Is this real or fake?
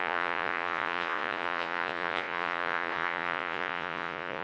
fake